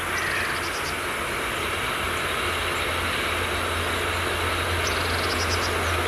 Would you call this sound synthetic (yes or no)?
no